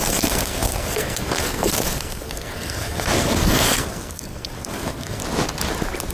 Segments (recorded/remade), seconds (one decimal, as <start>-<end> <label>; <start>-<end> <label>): 0.0-5.2 remade; 5.2-6.1 recorded